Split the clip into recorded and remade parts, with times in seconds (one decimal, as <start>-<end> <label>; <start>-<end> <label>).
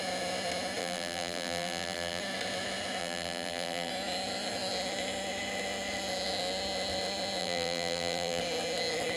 0.0-0.8 recorded; 0.8-2.2 remade; 2.2-3.0 recorded; 3.0-3.9 remade; 3.9-7.4 recorded; 7.4-8.4 remade; 8.4-9.2 recorded